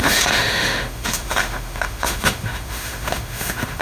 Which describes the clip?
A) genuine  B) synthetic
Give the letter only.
B